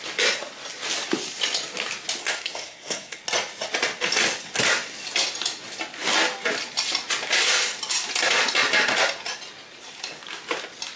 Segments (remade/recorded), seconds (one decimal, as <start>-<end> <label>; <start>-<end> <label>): 0.0-2.2 recorded; 2.2-3.2 remade; 3.2-11.0 recorded